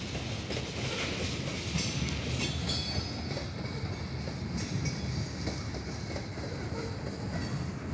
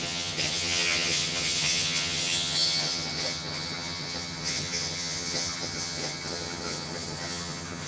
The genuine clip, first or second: first